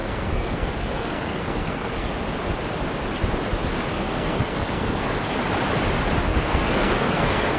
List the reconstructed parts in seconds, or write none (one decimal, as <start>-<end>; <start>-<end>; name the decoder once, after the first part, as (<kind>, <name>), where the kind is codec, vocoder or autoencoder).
0.0-2.1 (codec, SNAC); 3.9-5.4; 6.3-7.6